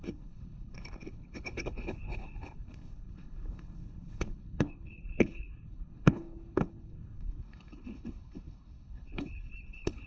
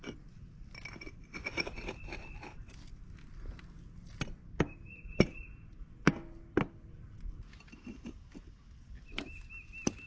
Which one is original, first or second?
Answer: second